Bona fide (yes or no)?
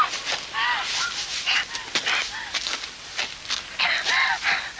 yes